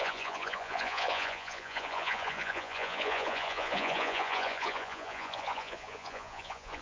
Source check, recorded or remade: remade